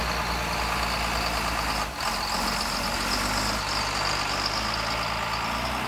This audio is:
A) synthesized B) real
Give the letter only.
B